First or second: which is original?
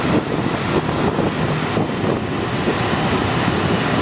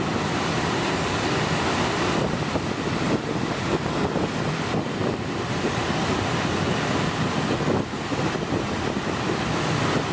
first